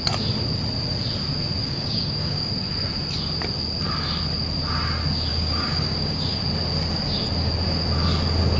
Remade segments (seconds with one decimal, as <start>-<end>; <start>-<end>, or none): 1.6-2.5; 5.3-6.4